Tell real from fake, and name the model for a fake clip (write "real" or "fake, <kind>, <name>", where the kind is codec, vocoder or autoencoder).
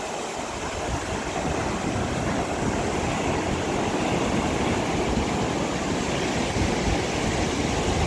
real